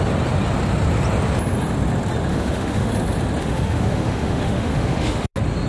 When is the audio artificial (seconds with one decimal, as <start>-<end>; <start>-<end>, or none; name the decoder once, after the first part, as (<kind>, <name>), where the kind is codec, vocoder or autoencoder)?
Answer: 2.3-2.9 (autoencoder, DAC-VAE); 3.4-5.3